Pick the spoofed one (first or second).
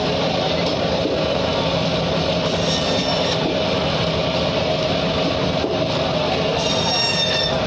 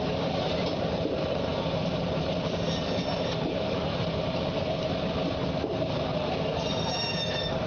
second